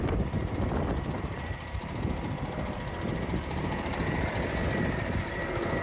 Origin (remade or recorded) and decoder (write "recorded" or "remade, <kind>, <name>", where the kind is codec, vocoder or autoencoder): remade, vocoder, BigVGAN v2